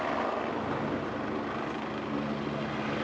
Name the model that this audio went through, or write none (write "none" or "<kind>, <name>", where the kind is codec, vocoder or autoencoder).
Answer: none